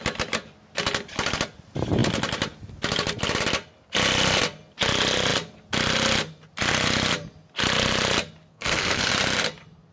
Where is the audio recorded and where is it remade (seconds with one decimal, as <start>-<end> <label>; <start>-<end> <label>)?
0.0-8.5 recorded; 8.5-9.1 remade; 9.1-9.9 recorded